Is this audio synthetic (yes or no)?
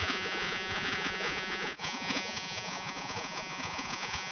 yes